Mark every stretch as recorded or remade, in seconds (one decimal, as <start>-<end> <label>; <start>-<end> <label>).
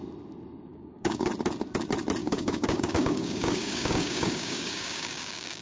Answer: 0.0-0.7 recorded; 0.7-1.3 remade; 1.3-2.2 recorded; 2.2-5.6 remade